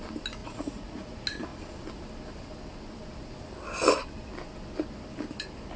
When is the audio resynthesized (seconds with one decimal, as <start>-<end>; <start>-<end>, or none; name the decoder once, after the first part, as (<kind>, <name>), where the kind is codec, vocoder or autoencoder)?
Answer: 0.4-1.1 (vocoder, Vocos)